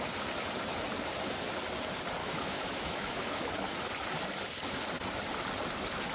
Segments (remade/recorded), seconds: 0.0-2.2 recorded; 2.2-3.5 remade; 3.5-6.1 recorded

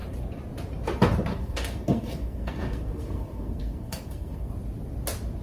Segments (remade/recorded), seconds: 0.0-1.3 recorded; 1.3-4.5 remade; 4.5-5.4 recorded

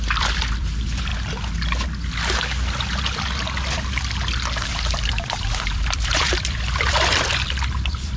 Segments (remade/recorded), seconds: 0.0-1.1 remade; 1.1-4.7 recorded; 4.7-8.2 remade